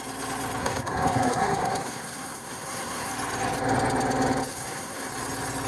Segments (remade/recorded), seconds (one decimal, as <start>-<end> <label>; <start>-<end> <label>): 0.0-0.6 recorded; 0.6-3.1 remade; 3.1-4.5 recorded; 4.5-5.1 remade; 5.1-5.7 recorded